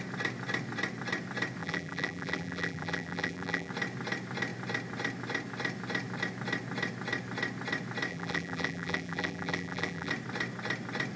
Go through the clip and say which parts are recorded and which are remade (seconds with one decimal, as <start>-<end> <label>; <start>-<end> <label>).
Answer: 0.0-1.6 recorded; 1.6-3.7 remade; 3.7-8.1 recorded; 8.1-10.1 remade; 10.1-11.2 recorded